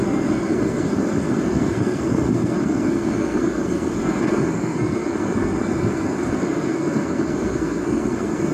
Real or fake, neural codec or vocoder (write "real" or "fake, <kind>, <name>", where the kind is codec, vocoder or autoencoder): fake, codec, SNAC